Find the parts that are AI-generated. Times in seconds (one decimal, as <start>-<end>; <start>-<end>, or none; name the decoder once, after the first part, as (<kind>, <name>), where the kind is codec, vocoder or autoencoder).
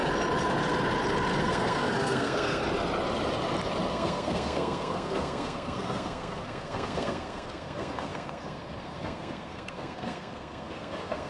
1.4-2.6 (codec, SNAC); 3.9-11.3